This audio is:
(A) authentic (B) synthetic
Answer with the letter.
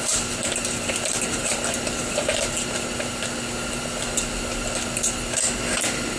A